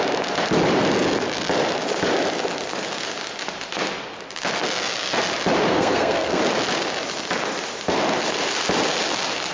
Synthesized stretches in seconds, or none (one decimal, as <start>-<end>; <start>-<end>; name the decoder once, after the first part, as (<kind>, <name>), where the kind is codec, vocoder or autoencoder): 5.7-6.4 (codec, SNAC)